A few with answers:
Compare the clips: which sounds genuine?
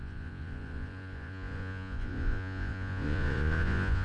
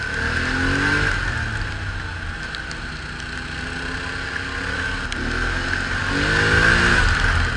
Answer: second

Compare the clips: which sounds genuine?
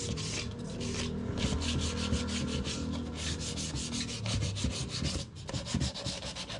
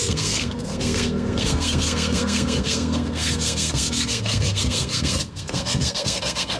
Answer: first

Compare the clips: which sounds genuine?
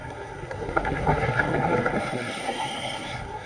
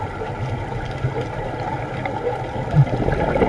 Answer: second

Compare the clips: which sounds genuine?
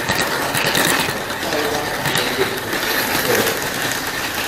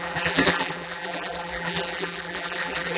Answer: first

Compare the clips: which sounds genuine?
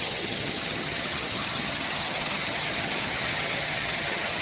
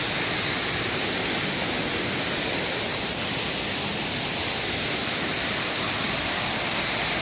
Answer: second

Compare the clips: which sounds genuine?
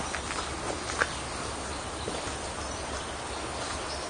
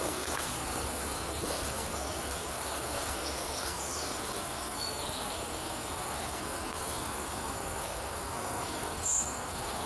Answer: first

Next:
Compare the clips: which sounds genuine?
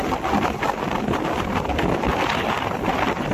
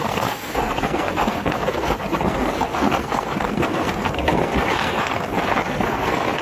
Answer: first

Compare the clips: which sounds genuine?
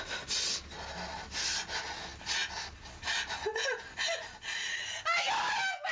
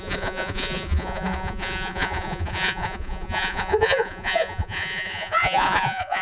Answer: first